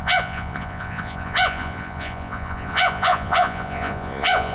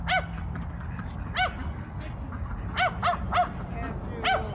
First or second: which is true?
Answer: second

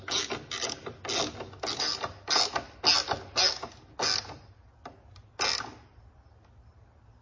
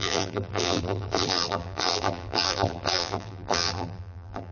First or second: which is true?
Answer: first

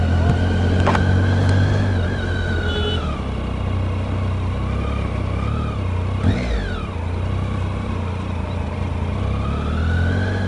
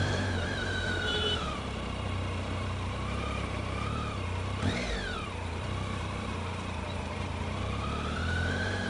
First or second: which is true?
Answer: first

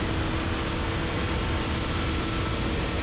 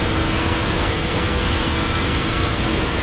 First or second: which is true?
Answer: first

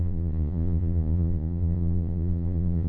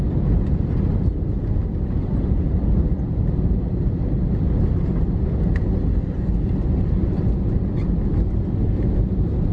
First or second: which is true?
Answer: second